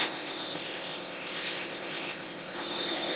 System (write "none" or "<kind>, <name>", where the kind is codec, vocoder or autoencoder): codec, ZipCodec